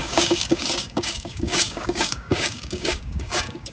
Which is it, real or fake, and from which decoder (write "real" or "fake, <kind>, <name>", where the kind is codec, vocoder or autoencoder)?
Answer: fake, codec, DAC